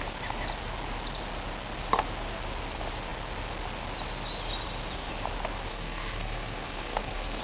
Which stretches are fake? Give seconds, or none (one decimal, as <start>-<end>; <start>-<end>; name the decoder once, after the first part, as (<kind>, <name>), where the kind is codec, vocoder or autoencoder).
5.7-7.4 (codec, SNAC)